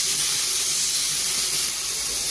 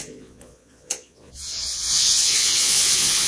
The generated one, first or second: second